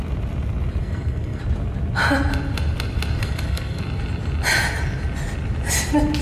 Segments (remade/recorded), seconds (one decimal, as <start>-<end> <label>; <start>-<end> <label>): 0.0-0.8 recorded; 0.8-1.4 remade; 1.4-3.2 recorded; 3.2-3.8 remade; 3.8-6.2 recorded